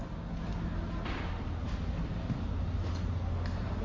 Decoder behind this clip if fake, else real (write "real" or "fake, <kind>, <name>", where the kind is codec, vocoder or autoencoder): real